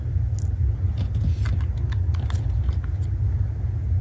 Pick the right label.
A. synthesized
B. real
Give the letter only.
B